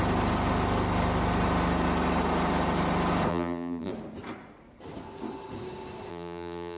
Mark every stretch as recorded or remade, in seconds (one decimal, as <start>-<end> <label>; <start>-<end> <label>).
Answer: 0.0-3.3 recorded; 3.3-3.9 remade; 3.9-6.1 recorded; 6.1-6.8 remade